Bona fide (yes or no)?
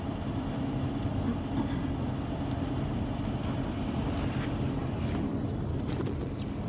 yes